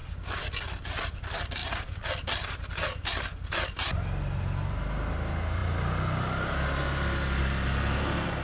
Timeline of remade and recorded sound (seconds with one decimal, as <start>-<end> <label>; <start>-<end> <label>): 0.0-8.4 recorded